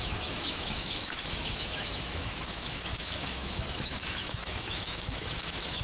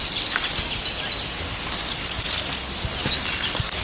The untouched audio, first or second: second